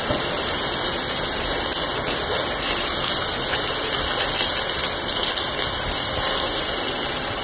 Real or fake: real